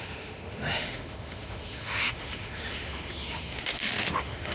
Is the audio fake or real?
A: fake